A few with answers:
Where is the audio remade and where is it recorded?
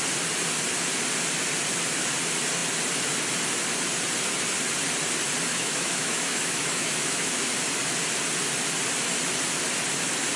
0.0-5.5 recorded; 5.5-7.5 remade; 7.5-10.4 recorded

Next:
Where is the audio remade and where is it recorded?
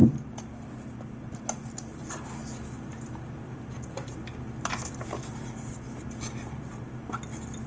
0.0-7.7 recorded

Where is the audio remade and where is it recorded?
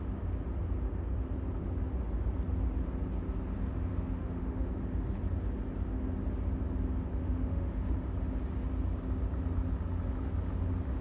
0.0-3.9 recorded; 3.9-4.7 remade; 4.7-7.2 recorded; 7.2-7.9 remade; 7.9-11.0 recorded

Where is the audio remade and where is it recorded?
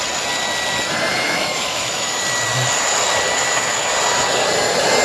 0.0-1.1 recorded; 1.1-2.2 remade; 2.2-5.0 recorded